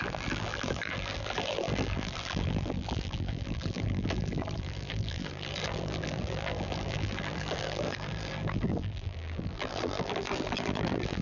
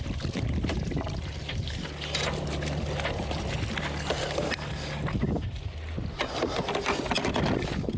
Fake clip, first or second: first